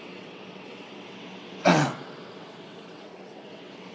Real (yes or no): no